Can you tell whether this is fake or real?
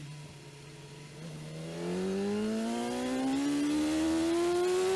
real